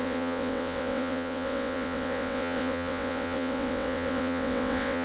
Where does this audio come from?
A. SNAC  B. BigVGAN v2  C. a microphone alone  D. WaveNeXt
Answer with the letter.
D